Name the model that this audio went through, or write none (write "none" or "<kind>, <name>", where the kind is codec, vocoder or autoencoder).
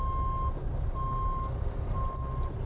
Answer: none